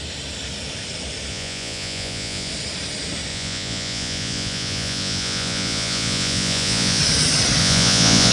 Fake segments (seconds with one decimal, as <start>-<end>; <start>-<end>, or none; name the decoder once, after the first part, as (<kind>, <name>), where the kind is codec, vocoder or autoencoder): 1.3-2.5 (vocoder, Vocos); 3.3-7.0; 7.6-8.3